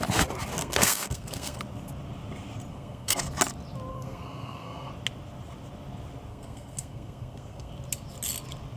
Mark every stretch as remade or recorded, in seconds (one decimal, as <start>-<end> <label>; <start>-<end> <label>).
0.0-0.6 recorded; 0.6-1.6 remade; 1.6-2.7 recorded; 2.7-3.3 remade; 3.3-3.9 recorded; 3.9-4.9 remade; 4.9-6.3 recorded; 6.3-7.7 remade; 7.7-8.8 recorded